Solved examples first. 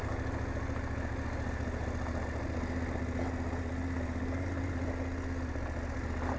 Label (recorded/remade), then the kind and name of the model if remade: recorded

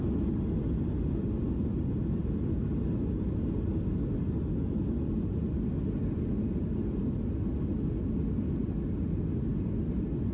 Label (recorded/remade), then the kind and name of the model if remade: recorded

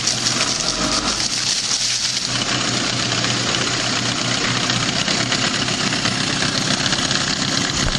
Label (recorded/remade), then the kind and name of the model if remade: recorded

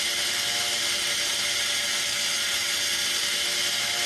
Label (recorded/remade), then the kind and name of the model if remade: recorded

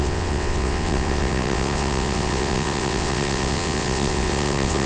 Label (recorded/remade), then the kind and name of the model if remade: remade, vocoder, WaveNeXt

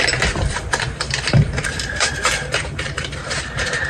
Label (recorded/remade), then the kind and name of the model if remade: remade, vocoder, BigVGAN v2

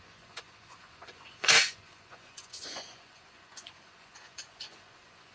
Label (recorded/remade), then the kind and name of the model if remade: remade, vocoder, Vocos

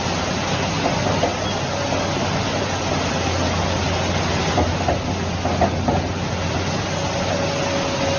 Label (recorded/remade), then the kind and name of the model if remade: recorded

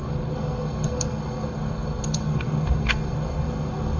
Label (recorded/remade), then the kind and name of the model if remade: remade, codec, SNAC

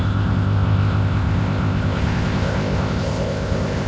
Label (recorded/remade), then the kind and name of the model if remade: remade, codec, ZipCodec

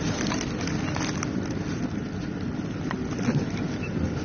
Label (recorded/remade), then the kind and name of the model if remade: recorded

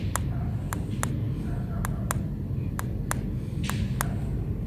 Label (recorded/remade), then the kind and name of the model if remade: recorded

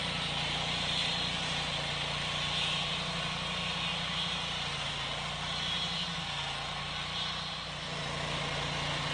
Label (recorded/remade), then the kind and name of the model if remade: remade, vocoder, BigVGAN v2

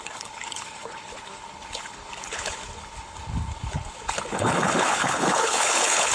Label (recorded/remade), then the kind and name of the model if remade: remade, codec, HILCodec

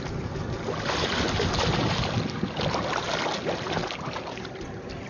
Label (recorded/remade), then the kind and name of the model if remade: recorded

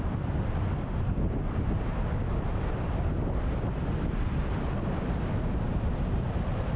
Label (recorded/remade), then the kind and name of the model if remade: recorded